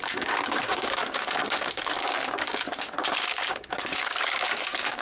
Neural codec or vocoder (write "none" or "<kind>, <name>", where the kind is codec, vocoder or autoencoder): codec, DAC